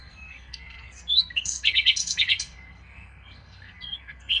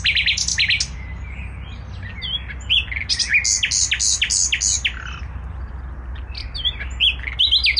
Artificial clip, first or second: first